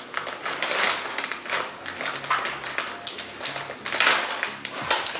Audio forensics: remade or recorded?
recorded